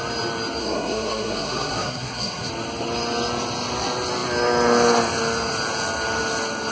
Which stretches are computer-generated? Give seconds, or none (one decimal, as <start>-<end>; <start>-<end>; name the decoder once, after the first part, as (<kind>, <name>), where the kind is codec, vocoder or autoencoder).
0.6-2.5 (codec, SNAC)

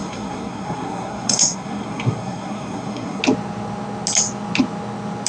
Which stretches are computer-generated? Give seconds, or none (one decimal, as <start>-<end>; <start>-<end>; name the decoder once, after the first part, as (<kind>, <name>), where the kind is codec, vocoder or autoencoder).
0.0-3.2 (codec, SNAC)

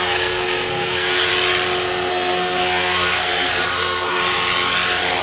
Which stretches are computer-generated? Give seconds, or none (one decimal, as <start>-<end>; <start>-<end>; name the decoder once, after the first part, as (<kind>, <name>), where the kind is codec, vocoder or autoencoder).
0.0-1.3 (codec, SNAC); 2.1-4.2

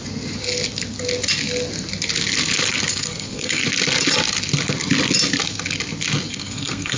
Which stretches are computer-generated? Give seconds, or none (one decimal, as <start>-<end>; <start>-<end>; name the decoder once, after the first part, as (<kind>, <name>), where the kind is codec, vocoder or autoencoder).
2.9-3.6 (codec, SNAC); 6.3-7.0

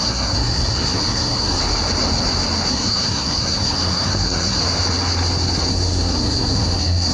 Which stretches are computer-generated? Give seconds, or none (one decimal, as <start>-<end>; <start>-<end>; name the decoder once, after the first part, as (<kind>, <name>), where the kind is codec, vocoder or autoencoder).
0.0-1.6 (codec, SNAC); 2.7-4.6; 5.7-7.1

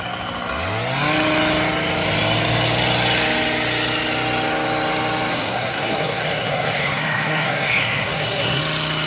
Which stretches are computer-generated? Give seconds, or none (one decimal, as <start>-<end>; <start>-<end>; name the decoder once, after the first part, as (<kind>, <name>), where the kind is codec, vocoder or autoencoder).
5.3-8.6 (codec, SNAC)

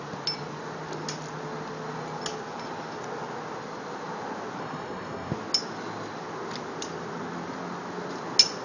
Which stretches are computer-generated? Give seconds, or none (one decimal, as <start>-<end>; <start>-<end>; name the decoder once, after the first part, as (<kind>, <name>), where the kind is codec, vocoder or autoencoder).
4.6-5.3 (codec, SNAC)

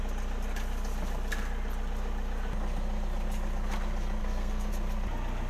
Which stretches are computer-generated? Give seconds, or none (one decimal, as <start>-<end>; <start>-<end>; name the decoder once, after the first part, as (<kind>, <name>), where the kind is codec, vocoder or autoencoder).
4.2-4.7 (codec, SNAC)